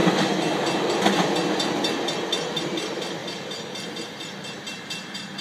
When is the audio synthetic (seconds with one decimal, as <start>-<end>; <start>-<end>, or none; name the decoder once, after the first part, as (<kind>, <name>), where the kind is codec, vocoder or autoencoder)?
2.6-3.2 (vocoder, BigVGAN v2); 3.9-5.4